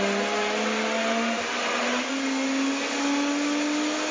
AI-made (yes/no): no